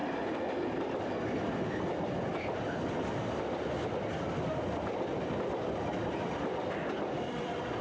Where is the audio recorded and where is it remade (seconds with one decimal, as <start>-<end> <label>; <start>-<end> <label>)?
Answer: 0.0-7.8 recorded

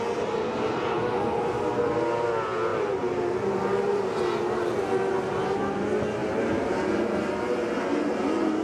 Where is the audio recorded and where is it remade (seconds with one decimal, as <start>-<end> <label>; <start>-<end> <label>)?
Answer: 0.0-2.7 recorded; 2.7-4.1 remade; 4.1-6.2 recorded; 6.2-7.3 remade; 7.3-8.6 recorded